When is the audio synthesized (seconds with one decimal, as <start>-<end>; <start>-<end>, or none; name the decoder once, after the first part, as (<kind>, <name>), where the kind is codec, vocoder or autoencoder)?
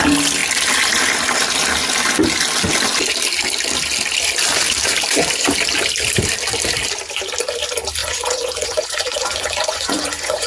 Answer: 8.0-10.5 (vocoder, Vocos)